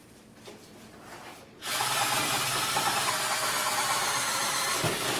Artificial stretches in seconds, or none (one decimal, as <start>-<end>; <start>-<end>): none